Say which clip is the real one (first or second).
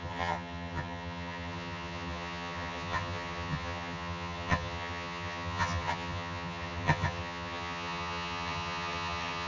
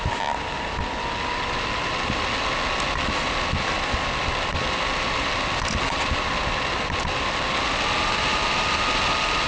second